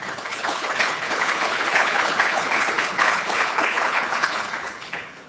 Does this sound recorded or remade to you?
remade